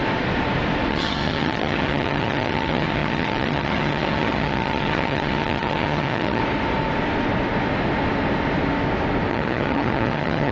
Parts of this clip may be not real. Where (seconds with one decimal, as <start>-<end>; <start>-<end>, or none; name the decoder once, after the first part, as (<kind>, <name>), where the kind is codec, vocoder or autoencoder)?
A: 0.9-6.4 (vocoder, HiFi-GAN); 9.3-10.5